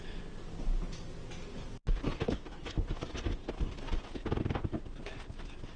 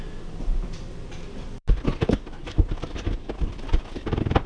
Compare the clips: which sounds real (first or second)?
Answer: first